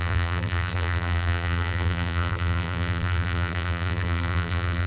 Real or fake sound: fake